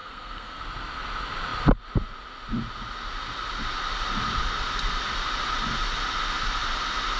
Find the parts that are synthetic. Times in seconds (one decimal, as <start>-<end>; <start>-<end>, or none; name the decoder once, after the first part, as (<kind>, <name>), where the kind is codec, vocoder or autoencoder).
0.0-0.6 (codec, SNAC)